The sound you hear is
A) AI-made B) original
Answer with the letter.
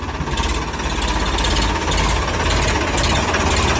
B